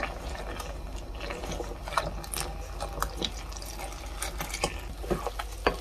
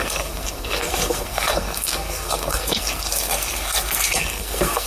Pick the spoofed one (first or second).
second